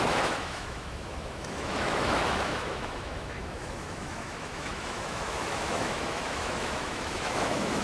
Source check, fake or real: fake